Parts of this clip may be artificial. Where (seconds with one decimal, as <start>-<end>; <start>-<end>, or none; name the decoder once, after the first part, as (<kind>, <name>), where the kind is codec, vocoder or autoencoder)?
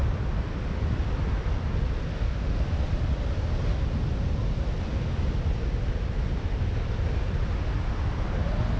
2.1-2.7 (autoencoder, DAC-VAE)